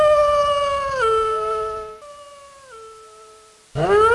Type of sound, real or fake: real